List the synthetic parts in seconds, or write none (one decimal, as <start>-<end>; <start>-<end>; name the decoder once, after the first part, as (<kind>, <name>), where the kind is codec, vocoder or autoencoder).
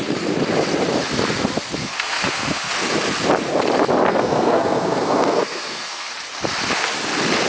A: 1.8-2.7 (codec, SNAC); 4.1-6.1